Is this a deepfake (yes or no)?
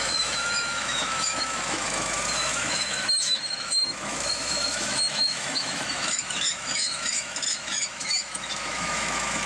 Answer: yes